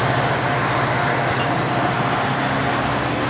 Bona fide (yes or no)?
yes